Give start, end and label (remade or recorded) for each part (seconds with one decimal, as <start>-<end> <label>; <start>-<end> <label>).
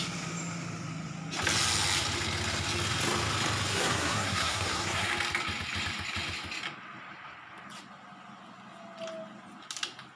0.0-3.7 recorded; 3.7-5.1 remade; 5.1-10.2 recorded